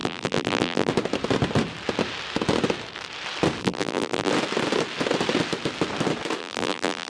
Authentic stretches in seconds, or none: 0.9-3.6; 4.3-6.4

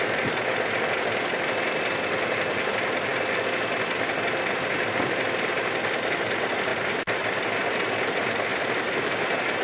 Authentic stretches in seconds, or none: 0.0-6.7; 7.2-8.5

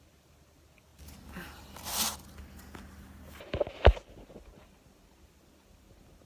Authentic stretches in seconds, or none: 0.0-6.3

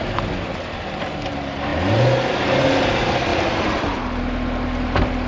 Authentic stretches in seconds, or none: 0.0-3.3; 4.2-5.3